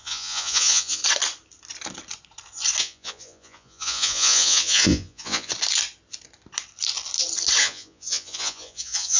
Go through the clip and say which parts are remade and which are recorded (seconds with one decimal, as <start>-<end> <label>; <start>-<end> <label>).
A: 0.0-1.0 remade; 1.0-2.8 recorded; 2.8-5.5 remade; 5.5-7.6 recorded; 7.6-9.2 remade